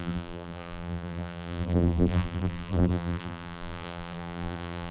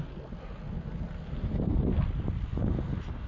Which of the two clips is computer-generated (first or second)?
first